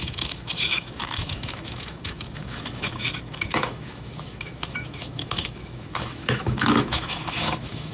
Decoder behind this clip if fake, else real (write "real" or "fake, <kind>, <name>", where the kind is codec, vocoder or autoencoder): fake, autoencoder, DAC-VAE